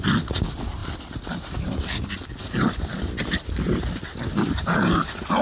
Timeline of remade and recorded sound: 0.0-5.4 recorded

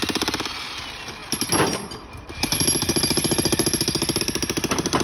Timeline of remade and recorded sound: 0.0-5.0 recorded

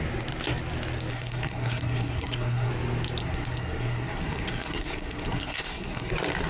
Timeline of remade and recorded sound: 0.0-1.1 recorded; 1.1-2.7 remade; 2.7-3.2 recorded; 3.2-6.1 remade; 6.1-6.5 recorded

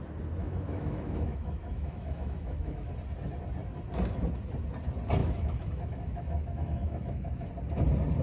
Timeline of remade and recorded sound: 0.0-0.4 recorded; 0.4-2.9 remade; 2.9-5.2 recorded; 5.2-7.5 remade; 7.5-8.2 recorded